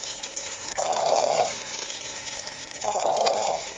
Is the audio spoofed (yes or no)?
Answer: yes